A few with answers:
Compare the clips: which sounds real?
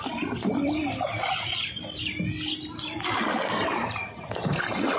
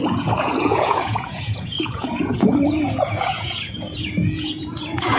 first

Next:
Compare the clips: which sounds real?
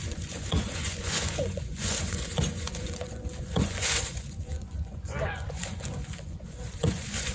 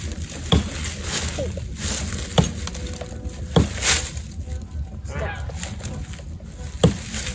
second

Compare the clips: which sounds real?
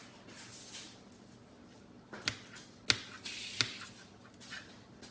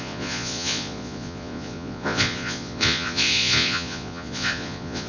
first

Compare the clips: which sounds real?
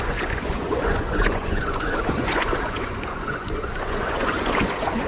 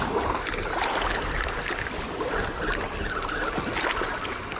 second